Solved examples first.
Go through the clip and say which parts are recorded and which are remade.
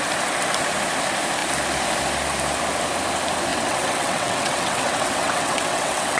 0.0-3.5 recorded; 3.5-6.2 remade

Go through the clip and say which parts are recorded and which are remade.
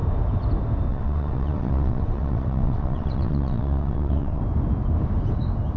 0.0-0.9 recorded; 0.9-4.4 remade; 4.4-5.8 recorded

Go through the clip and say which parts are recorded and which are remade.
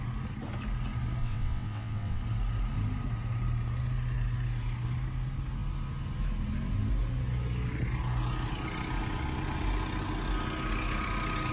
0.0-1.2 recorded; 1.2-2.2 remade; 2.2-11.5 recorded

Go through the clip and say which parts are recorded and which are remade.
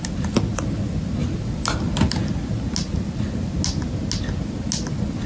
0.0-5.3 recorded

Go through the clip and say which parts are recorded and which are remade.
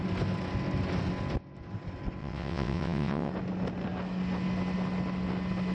0.0-2.2 recorded; 2.2-3.3 remade; 3.3-5.7 recorded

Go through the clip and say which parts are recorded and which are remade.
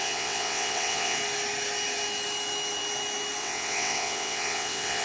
0.0-1.2 remade; 1.2-3.4 recorded; 3.4-5.0 remade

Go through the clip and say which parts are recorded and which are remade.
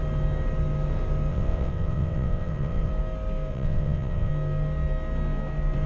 0.0-1.3 recorded; 1.3-2.9 remade; 2.9-3.5 recorded; 3.5-4.3 remade; 4.3-5.9 recorded